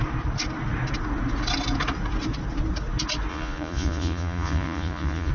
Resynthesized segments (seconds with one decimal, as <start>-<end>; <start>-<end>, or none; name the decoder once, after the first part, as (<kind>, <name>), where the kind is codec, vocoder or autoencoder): 3.3-5.3 (vocoder, Vocos)